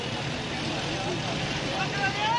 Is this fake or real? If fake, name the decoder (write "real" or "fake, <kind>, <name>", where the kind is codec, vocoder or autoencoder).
real